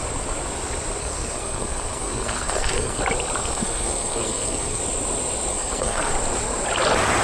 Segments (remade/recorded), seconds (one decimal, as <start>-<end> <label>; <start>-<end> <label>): 0.0-1.0 recorded; 1.0-3.0 remade; 3.0-3.4 recorded; 3.4-4.8 remade; 4.8-5.5 recorded; 5.5-6.1 remade; 6.1-7.2 recorded